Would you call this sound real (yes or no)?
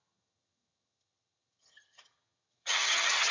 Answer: no